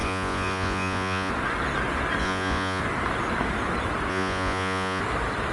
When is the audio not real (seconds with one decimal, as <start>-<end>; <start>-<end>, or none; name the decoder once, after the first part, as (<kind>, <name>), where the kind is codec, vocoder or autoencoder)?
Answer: 0.0-1.3 (vocoder, Vocos); 2.2-2.8; 4.1-5.0